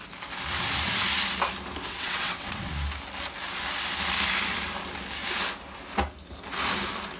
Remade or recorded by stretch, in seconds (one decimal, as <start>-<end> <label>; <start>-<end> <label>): 0.0-1.9 recorded; 1.9-2.7 remade; 2.7-7.2 recorded